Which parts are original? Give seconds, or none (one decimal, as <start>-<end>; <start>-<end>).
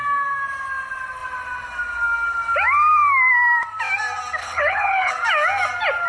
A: 0.0-4.4; 5.1-6.1